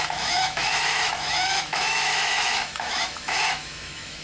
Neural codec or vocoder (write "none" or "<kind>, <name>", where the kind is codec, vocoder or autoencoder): autoencoder, DAC-VAE